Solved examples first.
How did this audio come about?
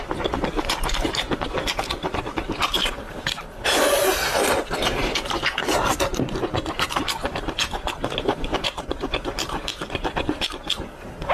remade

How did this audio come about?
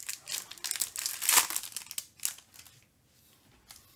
recorded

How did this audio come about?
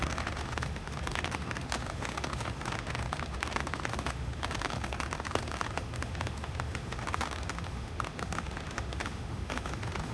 remade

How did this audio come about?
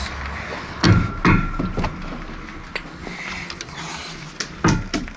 recorded